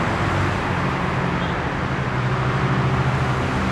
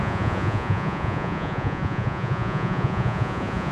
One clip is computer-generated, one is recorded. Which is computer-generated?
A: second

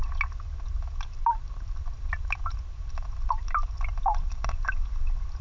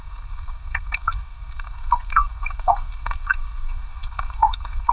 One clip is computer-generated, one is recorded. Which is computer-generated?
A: second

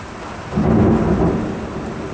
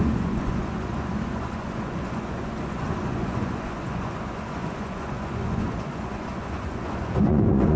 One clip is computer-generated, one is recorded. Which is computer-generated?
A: second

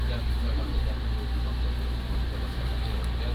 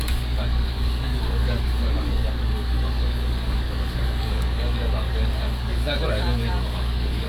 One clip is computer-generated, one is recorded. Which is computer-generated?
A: second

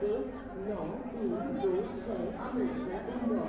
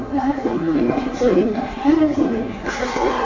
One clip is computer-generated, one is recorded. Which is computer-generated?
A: second